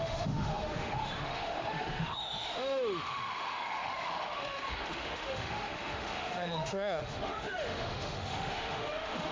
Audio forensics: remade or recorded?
remade